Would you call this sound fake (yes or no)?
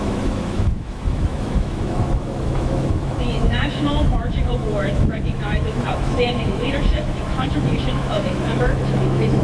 yes